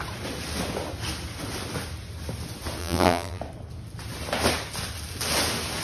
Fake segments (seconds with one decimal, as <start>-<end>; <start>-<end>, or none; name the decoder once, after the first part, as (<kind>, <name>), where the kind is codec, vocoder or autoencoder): 2.8-3.4 (vocoder, BigVGAN v2)

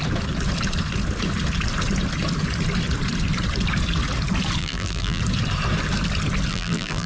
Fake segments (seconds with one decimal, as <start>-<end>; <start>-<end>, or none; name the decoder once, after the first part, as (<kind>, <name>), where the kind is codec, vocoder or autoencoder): 4.6-5.2 (vocoder, BigVGAN v2); 6.5-7.1

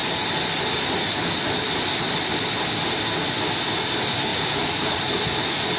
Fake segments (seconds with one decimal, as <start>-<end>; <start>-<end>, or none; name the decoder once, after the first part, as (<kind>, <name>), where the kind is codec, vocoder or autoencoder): 4.3-5.2 (vocoder, BigVGAN v2)

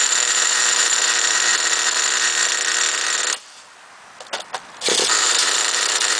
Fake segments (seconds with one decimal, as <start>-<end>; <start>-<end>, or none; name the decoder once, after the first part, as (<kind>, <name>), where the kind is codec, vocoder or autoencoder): 0.0-1.5 (vocoder, BigVGAN v2); 5.2-6.2

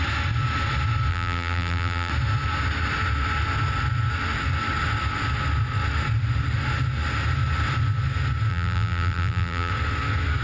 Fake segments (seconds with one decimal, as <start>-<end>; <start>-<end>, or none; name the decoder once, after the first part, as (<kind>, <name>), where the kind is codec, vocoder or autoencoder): 1.1-2.1 (vocoder, BigVGAN v2); 8.5-9.7

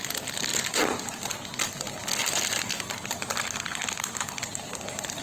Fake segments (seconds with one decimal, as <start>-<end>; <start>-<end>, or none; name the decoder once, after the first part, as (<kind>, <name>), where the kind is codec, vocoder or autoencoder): 0.5-1.2 (vocoder, BigVGAN v2)

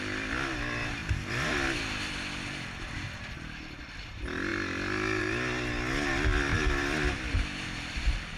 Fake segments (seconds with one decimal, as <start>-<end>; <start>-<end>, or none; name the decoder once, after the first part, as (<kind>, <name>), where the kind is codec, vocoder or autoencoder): 1.0-3.8 (vocoder, BigVGAN v2); 6.5-7.3